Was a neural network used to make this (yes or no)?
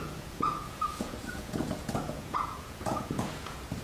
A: yes